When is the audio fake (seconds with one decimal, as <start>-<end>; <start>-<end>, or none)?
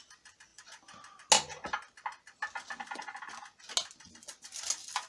none